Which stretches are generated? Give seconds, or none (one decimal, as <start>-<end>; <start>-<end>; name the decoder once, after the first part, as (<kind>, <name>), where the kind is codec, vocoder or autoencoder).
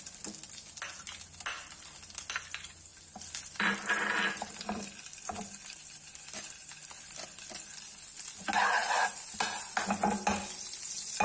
none